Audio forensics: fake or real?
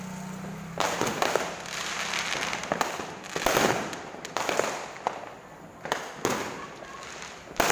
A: real